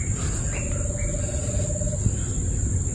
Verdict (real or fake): real